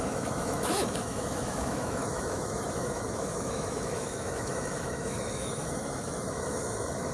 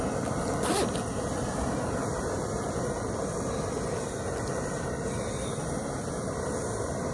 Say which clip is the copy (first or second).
first